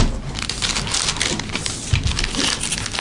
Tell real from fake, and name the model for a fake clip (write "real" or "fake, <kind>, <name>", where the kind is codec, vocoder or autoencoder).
real